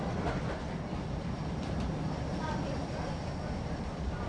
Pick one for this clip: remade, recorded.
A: recorded